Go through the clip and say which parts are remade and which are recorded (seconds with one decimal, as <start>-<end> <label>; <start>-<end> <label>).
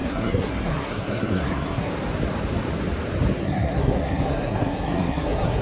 0.0-1.9 remade; 1.9-3.4 recorded; 3.4-5.6 remade